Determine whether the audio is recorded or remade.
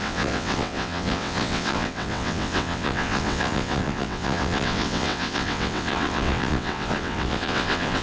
remade